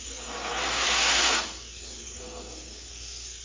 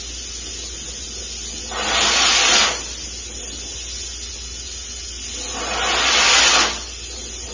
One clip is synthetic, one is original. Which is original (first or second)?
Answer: second